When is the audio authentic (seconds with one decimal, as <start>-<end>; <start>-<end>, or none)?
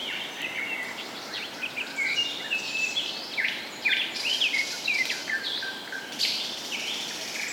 none